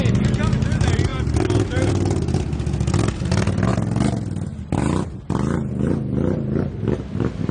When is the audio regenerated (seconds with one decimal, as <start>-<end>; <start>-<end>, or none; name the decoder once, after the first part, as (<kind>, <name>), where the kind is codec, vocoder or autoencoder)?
none